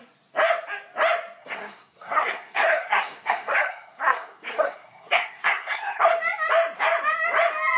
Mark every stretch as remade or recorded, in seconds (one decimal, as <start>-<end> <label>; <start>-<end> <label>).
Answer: 0.0-1.4 recorded; 1.4-6.1 remade; 6.1-7.8 recorded